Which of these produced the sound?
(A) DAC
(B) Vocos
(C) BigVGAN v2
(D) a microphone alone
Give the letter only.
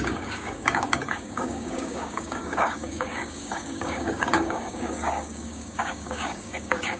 A